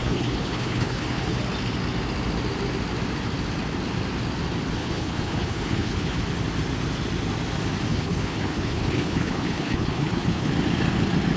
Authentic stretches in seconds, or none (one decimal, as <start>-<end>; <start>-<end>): 1.4-4.8; 6.2-7.9; 10.5-11.4

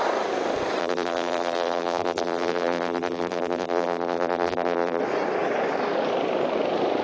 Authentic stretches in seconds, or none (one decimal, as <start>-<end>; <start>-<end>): 0.0-0.8; 5.0-7.0